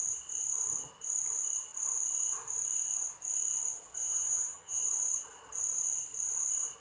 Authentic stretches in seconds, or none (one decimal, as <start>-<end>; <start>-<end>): 0.0-4.0; 4.8-6.8